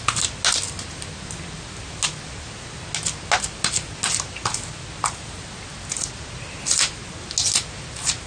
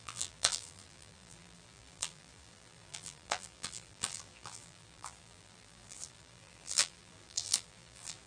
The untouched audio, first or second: first